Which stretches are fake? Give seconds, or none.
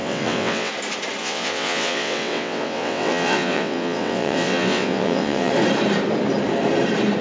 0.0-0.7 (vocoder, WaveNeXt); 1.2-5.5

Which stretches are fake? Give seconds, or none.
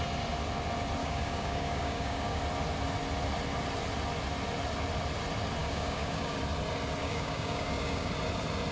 1.0-2.4 (codec, DAC); 5.6-6.4; 7.0-8.1